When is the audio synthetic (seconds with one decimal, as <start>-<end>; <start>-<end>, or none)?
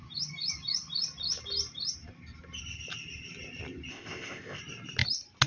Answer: 3.9-4.6